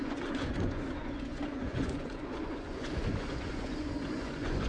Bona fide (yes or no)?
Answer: no